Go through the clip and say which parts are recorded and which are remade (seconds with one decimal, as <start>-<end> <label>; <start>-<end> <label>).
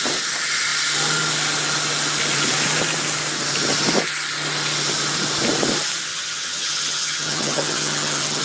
0.0-6.1 recorded; 6.1-8.4 remade